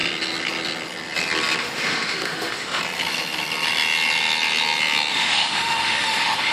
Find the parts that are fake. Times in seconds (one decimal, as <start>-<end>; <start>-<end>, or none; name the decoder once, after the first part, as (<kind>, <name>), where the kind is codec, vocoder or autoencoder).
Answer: 1.6-2.8 (autoencoder, DAC-VAE); 5.1-6.5